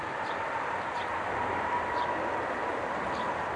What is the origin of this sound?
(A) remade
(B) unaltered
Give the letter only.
B